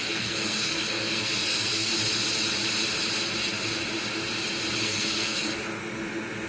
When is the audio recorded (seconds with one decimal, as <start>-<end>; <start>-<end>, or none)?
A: 1.9-4.8; 5.5-6.5